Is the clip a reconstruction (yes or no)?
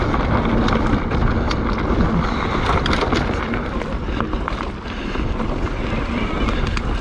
no